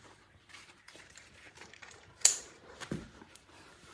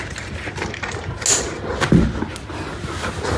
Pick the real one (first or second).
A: second